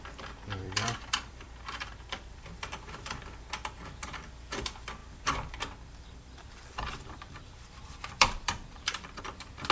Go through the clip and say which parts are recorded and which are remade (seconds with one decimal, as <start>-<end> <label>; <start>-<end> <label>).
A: 0.0-0.6 recorded; 0.6-3.5 remade; 3.5-5.0 recorded; 5.0-9.2 remade; 9.2-9.7 recorded